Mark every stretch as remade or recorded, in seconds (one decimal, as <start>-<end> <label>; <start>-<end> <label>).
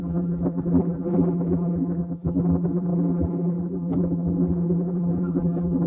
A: 0.0-5.9 remade